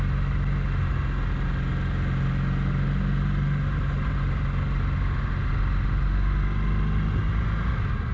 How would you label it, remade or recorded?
recorded